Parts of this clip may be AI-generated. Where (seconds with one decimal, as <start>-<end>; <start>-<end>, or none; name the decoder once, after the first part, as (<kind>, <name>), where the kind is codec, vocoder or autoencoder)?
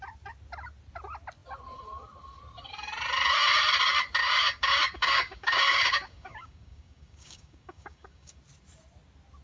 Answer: 4.2-8.4 (codec, DAC)